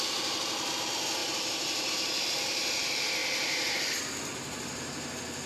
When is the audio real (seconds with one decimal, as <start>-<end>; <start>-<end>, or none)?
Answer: 0.0-1.2; 1.9-3.2; 3.8-5.5